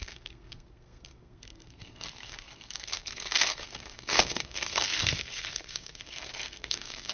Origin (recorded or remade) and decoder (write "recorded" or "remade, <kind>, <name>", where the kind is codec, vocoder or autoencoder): remade, codec, SNAC